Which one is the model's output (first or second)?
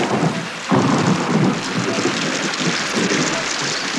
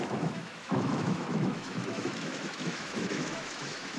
second